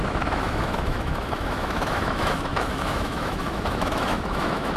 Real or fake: fake